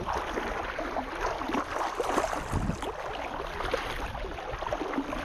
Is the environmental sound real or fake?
real